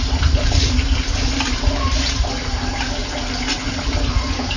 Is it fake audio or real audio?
real